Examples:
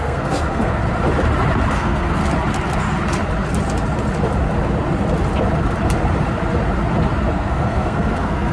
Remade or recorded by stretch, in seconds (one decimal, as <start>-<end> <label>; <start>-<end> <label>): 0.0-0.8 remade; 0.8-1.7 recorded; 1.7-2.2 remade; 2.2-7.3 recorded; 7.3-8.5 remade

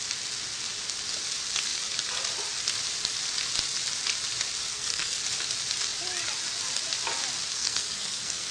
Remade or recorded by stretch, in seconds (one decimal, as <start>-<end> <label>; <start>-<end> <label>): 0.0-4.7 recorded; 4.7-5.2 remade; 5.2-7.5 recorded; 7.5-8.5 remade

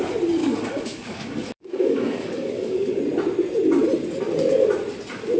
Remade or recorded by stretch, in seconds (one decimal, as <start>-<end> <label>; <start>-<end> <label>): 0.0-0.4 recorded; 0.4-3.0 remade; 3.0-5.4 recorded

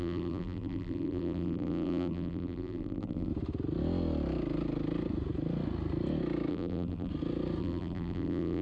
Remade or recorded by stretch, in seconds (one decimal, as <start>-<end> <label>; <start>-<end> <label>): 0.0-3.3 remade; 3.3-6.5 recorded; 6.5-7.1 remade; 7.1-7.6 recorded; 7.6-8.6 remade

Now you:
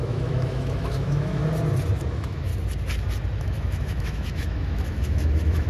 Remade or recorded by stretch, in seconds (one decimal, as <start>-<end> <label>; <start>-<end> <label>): 0.0-1.4 remade; 1.4-2.1 recorded; 2.1-2.5 remade; 2.5-3.4 recorded; 3.4-5.7 remade

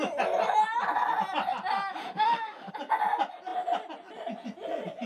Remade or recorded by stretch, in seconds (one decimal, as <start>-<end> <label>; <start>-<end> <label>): 0.0-2.0 recorded; 2.0-2.7 remade; 2.7-5.1 recorded

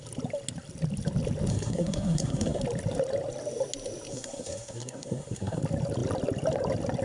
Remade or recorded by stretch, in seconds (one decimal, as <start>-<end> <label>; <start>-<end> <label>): 0.0-1.5 recorded; 1.5-2.6 remade; 2.6-4.1 recorded; 4.1-5.6 remade; 5.6-7.0 recorded